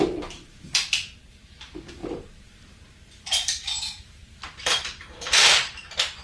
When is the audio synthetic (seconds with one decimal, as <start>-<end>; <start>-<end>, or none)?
0.0-6.2